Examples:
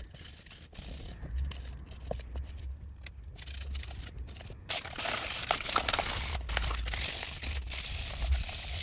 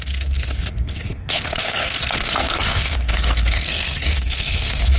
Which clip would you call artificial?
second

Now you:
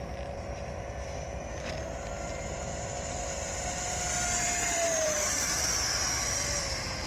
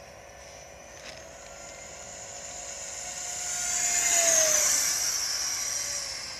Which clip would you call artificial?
first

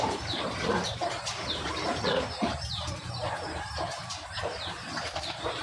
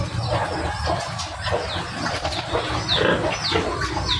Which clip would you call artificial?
first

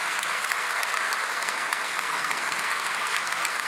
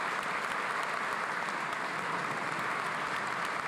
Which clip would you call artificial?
first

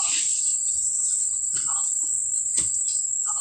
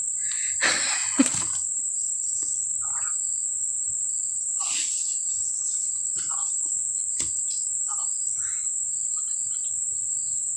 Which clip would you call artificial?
first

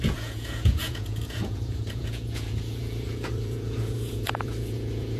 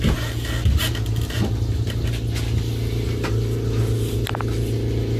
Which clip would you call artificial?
first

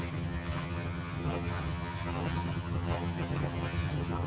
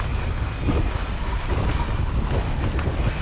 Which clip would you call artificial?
first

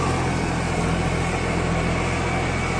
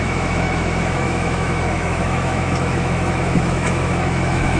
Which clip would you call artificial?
second